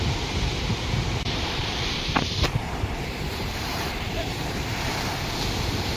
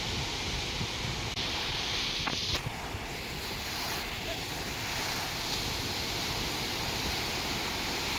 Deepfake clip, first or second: first